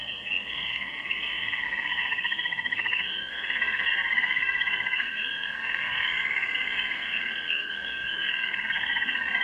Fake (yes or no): yes